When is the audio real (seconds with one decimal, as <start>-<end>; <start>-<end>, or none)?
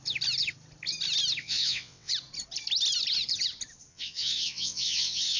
0.0-1.4; 2.1-3.9